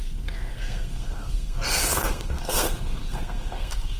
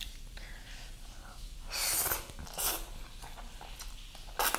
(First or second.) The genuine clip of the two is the second